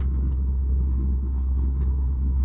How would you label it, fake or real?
fake